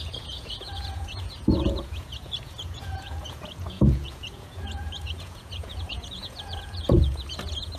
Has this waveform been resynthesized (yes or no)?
yes